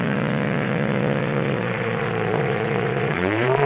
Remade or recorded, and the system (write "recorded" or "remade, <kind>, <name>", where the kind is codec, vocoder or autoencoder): remade, vocoder, Vocos